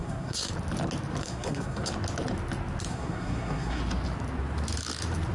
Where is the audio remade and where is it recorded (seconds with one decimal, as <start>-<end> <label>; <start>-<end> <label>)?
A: 0.0-0.5 remade; 0.5-1.2 recorded; 1.2-1.9 remade; 1.9-2.9 recorded; 2.9-3.8 remade; 3.8-5.3 recorded